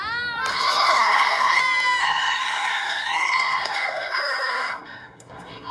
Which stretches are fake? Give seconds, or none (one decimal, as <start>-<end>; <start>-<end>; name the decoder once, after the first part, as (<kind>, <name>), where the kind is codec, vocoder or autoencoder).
0.5-1.6 (codec, SNAC); 2.0-5.7